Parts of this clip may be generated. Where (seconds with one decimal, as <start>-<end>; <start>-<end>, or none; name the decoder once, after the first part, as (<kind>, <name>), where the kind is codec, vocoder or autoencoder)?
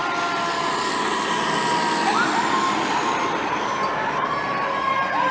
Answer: none